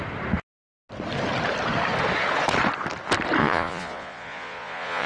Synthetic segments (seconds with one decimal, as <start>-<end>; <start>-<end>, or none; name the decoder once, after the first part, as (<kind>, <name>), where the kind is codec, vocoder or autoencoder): 3.4-5.1 (vocoder, Vocos)